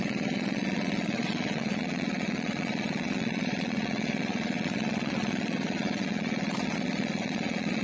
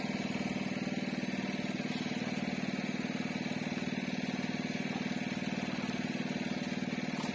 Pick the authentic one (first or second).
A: second